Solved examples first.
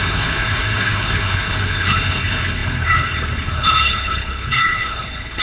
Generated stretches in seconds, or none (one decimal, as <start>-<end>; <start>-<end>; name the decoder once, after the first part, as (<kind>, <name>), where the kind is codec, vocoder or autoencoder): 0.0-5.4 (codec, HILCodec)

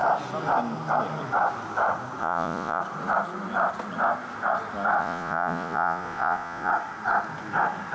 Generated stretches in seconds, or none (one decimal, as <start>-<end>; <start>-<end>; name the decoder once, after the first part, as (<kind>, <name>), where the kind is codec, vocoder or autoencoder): 2.2-2.8 (vocoder, Vocos); 5.0-6.7

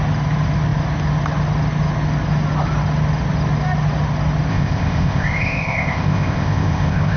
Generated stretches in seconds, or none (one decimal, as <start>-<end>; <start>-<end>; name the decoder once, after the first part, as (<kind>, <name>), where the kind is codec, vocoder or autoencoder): 4.5-7.2 (codec, ZipCodec)